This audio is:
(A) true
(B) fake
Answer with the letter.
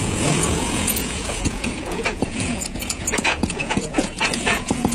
B